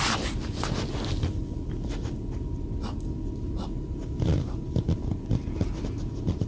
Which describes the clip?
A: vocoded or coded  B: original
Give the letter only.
B